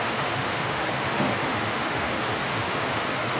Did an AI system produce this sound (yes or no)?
yes